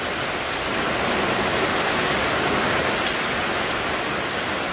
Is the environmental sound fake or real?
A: real